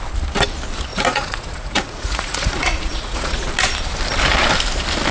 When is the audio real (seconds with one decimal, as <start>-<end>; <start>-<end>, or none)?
0.0-0.9; 3.5-5.1